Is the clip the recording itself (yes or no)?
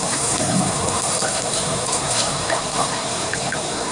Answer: no